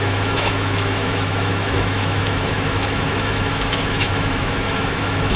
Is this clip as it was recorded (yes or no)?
no